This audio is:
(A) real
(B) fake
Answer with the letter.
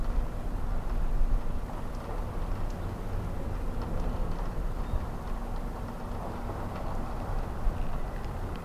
A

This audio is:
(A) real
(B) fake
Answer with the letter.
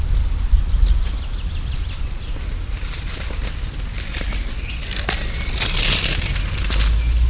A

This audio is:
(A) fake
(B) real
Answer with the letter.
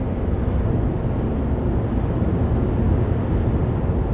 B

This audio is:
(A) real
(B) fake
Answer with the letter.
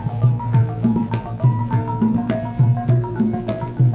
B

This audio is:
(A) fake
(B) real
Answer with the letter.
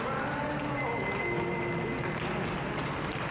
B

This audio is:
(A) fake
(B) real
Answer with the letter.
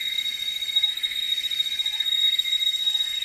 A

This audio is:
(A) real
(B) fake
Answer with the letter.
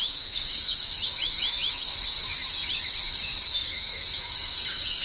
B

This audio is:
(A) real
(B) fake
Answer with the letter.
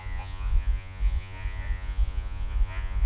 B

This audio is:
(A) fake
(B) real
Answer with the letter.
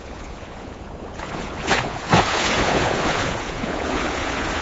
A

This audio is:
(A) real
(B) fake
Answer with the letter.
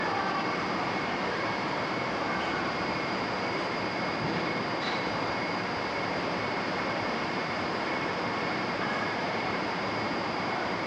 B